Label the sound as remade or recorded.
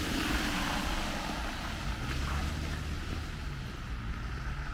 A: recorded